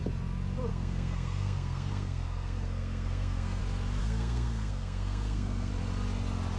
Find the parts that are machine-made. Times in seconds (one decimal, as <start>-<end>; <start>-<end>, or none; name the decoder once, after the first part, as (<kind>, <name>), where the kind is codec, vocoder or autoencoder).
0.7-3.6 (codec, SNAC); 4.0-5.7